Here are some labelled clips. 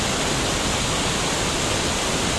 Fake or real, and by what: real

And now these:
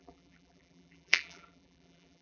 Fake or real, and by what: fake, vocoder, BigVGAN v2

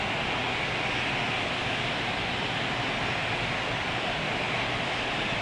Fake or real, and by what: real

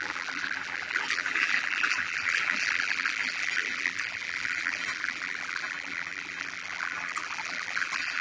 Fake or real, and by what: fake, vocoder, BigVGAN v2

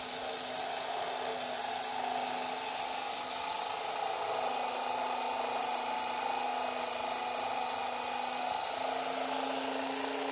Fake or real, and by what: real